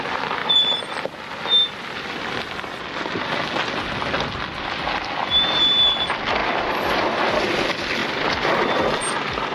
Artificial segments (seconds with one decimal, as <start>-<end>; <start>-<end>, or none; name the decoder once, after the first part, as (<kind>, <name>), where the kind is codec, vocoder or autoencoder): 0.4-2.7 (vocoder, BigVGAN v2); 6.4-7.0; 8.0-8.5